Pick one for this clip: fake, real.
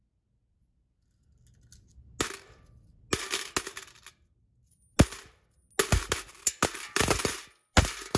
real